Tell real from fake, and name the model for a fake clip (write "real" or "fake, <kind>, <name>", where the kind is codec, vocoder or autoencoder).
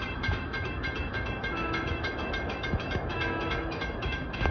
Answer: fake, autoencoder, DAC-VAE